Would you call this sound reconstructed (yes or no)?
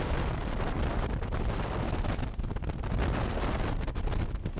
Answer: no